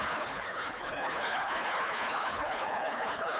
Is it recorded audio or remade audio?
remade